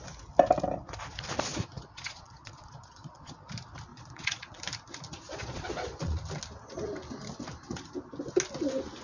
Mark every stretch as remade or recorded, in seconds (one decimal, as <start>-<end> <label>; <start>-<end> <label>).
0.0-1.5 recorded; 1.5-3.5 remade; 3.5-3.9 recorded; 3.9-4.6 remade; 4.6-5.3 recorded; 5.3-6.2 remade; 6.2-9.0 recorded